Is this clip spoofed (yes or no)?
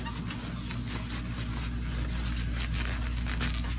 no